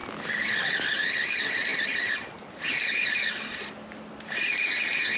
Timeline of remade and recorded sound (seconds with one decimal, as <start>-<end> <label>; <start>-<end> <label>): 0.0-0.8 remade; 0.8-1.7 recorded; 1.7-3.7 remade; 3.7-5.2 recorded